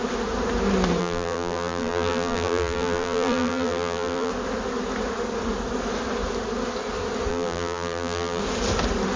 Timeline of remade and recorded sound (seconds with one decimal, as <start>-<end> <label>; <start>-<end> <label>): 0.0-1.0 recorded; 1.0-4.3 remade; 4.3-7.3 recorded; 7.3-8.4 remade; 8.4-9.2 recorded